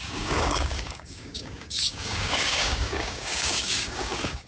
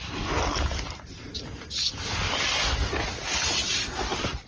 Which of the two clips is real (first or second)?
second